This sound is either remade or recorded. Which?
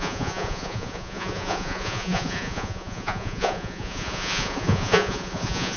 remade